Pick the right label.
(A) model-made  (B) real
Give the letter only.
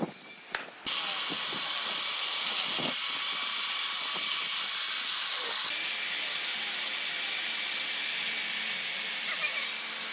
B